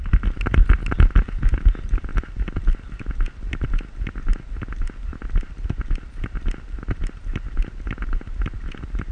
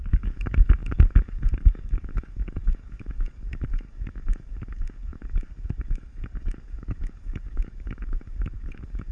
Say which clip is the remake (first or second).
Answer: second